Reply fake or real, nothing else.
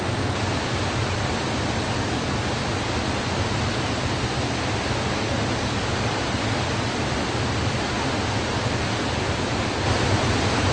real